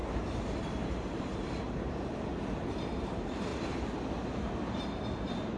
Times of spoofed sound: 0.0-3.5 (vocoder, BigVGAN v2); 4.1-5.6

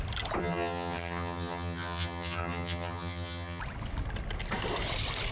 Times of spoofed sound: 0.4-3.6 (vocoder, HiFi-GAN)

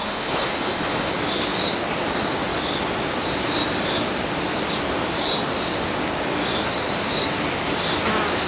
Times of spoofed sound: 0.0-1.1 (codec, HILCodec)

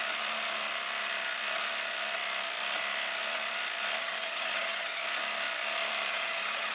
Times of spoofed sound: 4.0-5.0 (vocoder, HiFi-GAN); 6.1-6.7

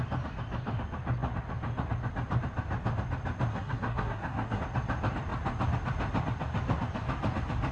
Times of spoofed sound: 3.5-4.6 (codec, SNAC)

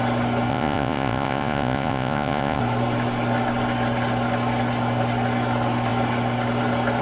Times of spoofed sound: 0.5-2.6 (vocoder, Vocos)